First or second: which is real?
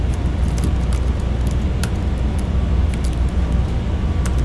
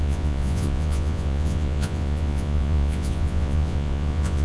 first